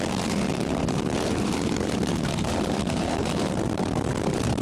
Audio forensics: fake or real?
fake